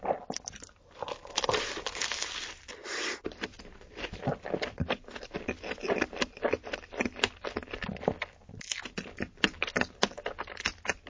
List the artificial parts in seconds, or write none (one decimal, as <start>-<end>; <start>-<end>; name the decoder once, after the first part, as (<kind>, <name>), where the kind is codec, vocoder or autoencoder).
none